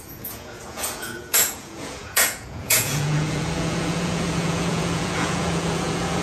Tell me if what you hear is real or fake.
fake